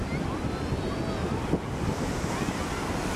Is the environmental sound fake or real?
real